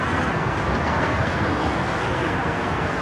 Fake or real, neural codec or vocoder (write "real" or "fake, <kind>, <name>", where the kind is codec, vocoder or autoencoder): fake, codec, SNAC